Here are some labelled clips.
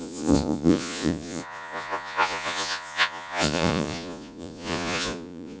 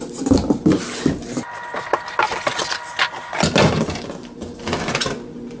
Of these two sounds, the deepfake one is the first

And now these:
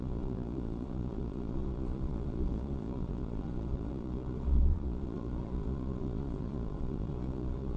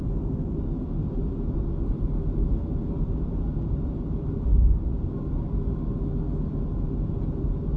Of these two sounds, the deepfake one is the first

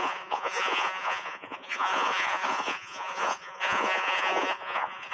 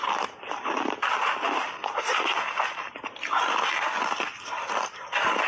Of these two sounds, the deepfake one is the first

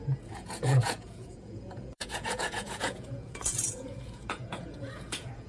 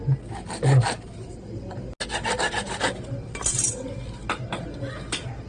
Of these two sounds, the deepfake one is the first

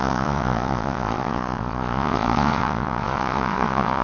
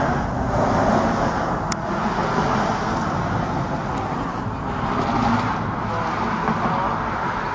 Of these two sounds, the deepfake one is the first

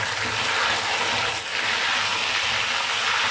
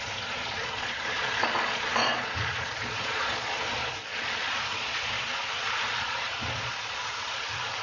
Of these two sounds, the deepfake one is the second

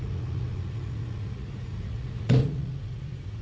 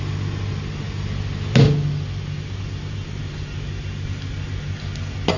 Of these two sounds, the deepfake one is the first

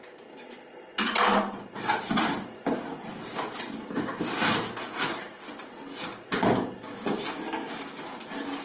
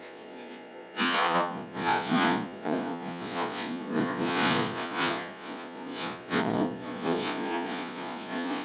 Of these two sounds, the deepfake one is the second